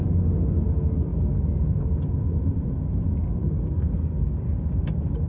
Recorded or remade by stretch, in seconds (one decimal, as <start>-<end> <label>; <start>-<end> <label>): 0.0-3.4 recorded; 3.4-4.7 remade; 4.7-5.3 recorded